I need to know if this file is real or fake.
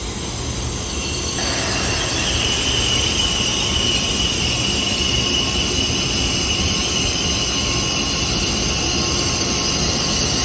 real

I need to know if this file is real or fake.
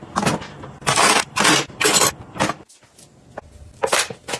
real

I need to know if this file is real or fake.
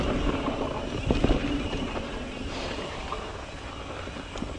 real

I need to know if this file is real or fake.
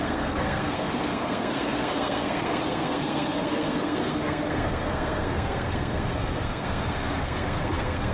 fake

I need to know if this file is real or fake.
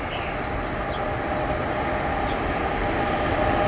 real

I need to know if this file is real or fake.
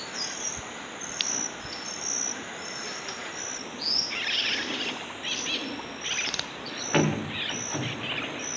real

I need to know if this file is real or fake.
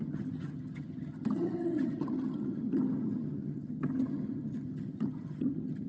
fake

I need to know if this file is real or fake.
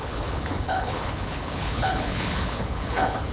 fake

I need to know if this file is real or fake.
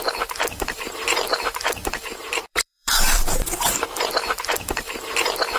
fake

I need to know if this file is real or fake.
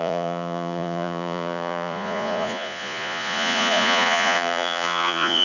fake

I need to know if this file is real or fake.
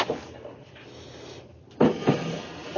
real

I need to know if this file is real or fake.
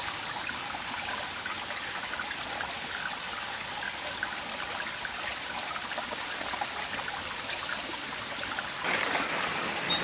real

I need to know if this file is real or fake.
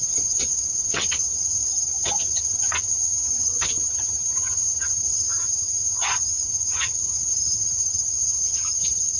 fake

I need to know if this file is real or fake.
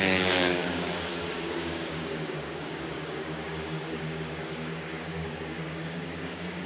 fake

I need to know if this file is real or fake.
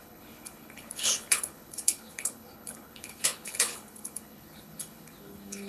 fake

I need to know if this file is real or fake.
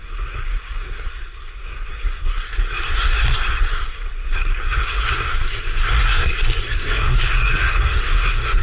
fake